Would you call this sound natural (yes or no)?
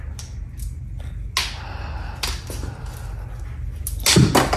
yes